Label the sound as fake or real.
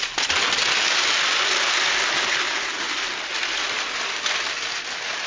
real